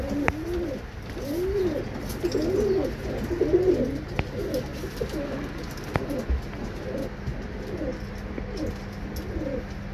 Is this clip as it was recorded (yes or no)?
yes